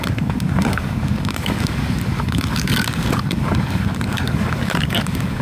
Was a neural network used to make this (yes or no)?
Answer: yes